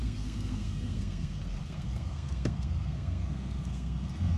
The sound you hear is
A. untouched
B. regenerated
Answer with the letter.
B